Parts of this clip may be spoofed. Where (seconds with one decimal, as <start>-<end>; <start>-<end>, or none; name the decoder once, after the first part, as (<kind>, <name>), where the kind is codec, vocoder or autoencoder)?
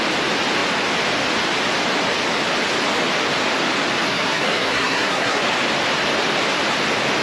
4.1-5.4 (codec, SNAC)